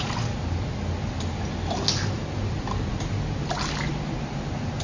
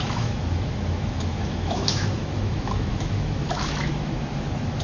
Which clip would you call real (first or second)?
first